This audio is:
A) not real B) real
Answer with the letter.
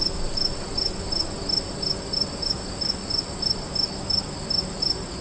B